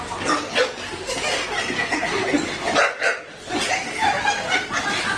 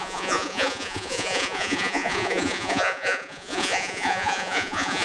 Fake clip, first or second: second